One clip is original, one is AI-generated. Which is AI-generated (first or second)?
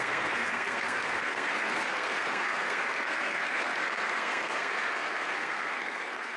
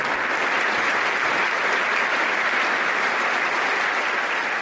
first